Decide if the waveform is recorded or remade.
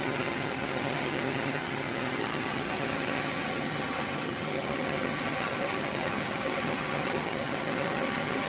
remade